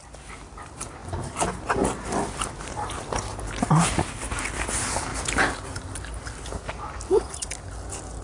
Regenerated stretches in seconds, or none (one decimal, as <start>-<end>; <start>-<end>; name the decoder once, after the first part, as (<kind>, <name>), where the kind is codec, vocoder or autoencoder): none